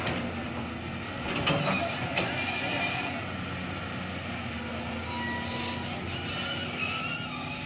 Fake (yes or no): no